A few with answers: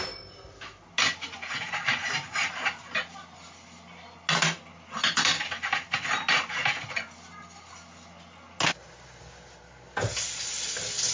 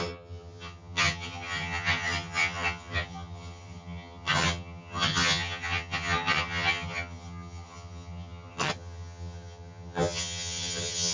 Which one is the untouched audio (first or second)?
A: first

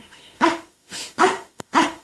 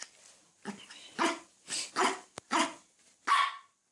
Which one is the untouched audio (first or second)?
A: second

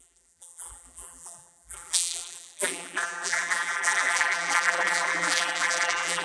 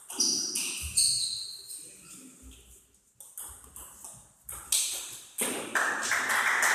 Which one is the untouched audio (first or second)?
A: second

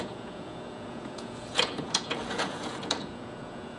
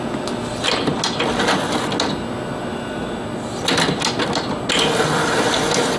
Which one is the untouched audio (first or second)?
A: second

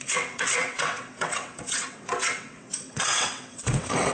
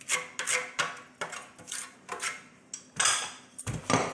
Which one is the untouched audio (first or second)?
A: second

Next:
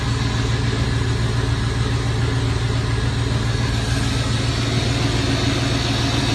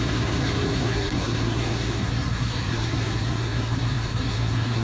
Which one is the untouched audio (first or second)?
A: first